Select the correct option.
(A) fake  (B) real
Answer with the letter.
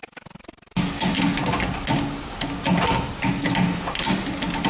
B